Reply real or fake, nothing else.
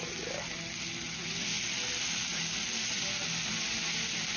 real